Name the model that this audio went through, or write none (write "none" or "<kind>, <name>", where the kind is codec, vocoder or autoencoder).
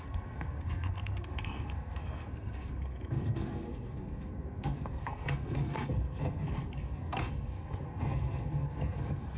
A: codec, SNAC